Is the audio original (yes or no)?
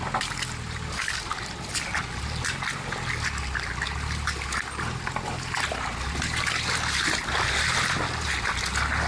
yes